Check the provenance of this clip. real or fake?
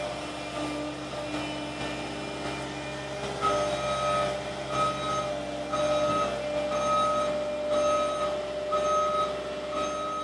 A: real